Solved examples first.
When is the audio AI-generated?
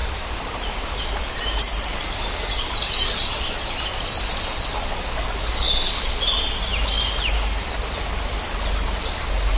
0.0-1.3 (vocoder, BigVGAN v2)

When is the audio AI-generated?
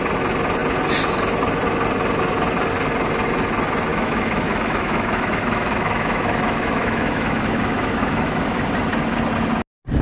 3.9-8.6 (autoencoder, DAC-VAE)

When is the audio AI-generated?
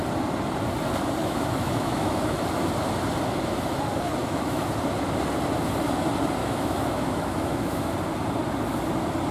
1.2-2.4 (autoencoder, DAC-VAE); 4.2-4.7; 6.4-7.9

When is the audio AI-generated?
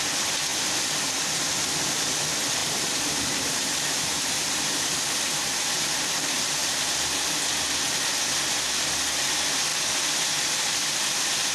2.6-5.5 (vocoder, BigVGAN v2)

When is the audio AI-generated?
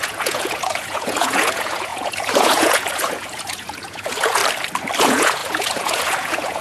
0.0-4.4 (vocoder, Vocos); 5.0-6.6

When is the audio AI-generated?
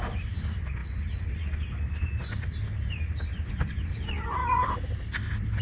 0.0-4.4 (vocoder, BigVGAN v2)